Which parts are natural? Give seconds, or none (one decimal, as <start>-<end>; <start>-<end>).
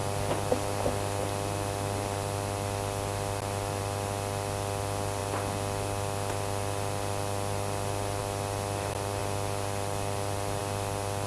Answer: 0.0-11.3